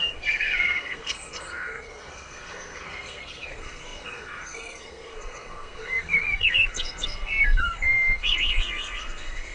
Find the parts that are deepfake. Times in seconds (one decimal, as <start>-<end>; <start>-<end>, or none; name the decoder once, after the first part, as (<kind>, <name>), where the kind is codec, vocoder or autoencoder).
0.0-9.5 (codec, SNAC)